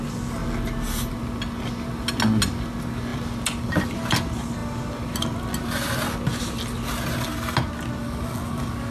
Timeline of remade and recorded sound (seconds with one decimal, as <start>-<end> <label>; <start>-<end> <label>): 0.0-8.0 recorded; 8.0-8.9 remade